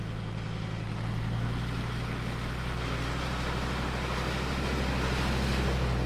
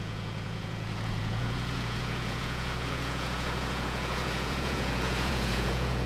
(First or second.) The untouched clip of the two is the first